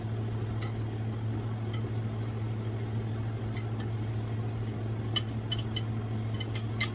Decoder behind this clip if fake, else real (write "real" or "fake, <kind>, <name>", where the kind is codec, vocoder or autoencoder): real